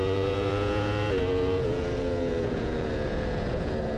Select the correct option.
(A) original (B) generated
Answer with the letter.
B